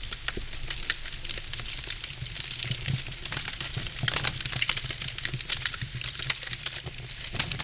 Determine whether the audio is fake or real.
real